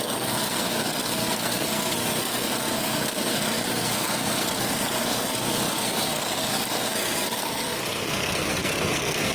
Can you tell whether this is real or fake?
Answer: fake